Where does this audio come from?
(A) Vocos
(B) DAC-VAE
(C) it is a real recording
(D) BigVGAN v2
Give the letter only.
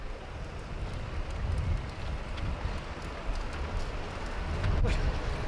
C